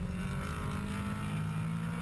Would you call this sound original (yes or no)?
yes